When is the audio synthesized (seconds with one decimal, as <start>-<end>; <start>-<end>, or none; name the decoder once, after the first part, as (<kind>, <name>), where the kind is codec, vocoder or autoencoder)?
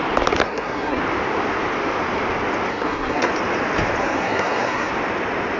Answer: 0.4-1.0 (codec, SNAC); 2.7-3.3; 4.0-4.9